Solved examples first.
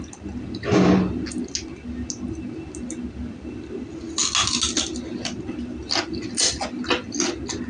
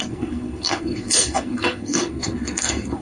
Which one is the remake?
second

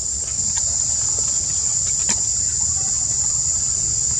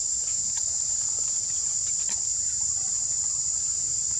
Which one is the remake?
second